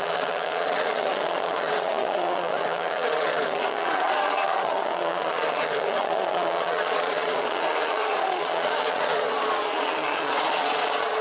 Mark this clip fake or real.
fake